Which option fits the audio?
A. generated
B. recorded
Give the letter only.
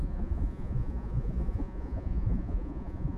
A